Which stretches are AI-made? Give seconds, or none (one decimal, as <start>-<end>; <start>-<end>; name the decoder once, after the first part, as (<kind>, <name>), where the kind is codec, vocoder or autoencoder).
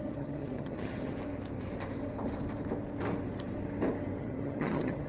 0.0-1.1 (vocoder, HiFi-GAN); 4.2-5.1